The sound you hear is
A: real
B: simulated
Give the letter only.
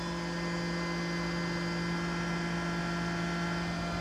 A